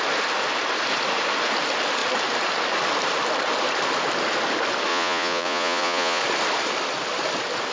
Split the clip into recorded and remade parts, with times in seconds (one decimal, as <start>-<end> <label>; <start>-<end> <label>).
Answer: 0.0-4.9 recorded; 4.9-6.2 remade; 6.2-7.7 recorded